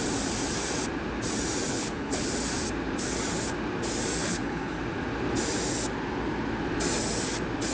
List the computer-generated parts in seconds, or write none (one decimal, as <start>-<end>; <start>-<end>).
1.7-2.3; 4.2-4.8